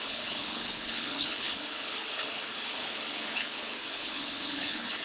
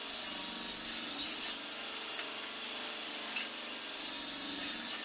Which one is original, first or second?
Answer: second